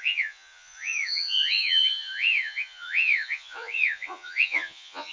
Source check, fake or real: fake